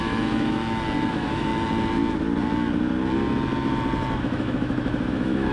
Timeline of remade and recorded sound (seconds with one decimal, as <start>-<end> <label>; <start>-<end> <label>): 0.0-0.6 remade; 0.6-1.1 recorded; 1.1-1.5 remade; 1.5-4.2 recorded; 4.2-5.5 remade